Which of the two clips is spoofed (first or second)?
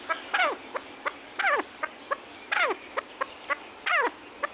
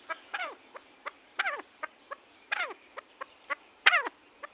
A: second